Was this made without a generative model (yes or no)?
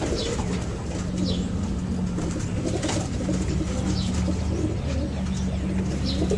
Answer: yes